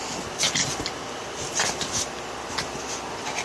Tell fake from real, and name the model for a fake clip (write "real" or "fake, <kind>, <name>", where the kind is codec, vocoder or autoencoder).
real